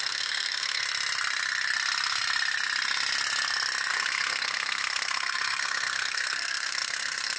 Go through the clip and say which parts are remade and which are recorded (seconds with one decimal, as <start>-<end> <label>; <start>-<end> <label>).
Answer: 0.0-0.8 remade; 0.8-3.9 recorded; 3.9-7.4 remade